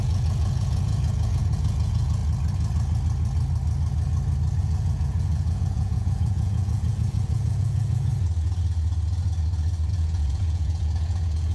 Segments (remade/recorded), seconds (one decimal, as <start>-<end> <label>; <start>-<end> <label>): 0.0-2.2 remade; 2.2-4.6 recorded; 4.6-8.1 remade; 8.1-9.9 recorded; 9.9-11.5 remade